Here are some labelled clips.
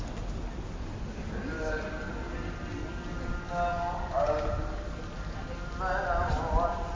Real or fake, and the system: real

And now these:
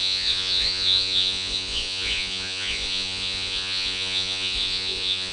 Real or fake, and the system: fake, vocoder, Vocos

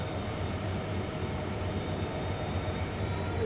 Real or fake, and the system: fake, vocoder, BigVGAN v2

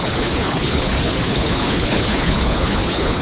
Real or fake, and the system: fake, codec, HILCodec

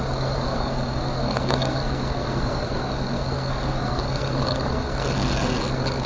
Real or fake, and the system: fake, codec, SNAC